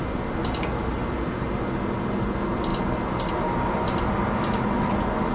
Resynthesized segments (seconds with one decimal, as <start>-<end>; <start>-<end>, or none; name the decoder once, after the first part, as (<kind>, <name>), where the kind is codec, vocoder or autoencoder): none

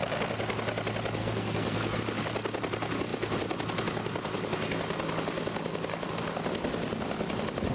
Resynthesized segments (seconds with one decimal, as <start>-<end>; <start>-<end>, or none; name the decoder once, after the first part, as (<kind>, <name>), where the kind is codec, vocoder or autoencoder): 1.2-2.0 (codec, SNAC)

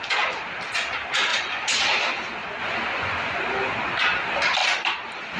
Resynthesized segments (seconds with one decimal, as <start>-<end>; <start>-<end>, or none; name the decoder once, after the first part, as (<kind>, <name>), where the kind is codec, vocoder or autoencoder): 1.3-1.8 (vocoder, Vocos); 2.4-3.4

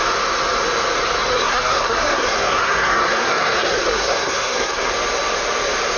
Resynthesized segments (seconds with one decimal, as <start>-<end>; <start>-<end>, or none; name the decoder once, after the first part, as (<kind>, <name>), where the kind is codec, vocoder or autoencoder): 1.3-4.9 (codec, SNAC)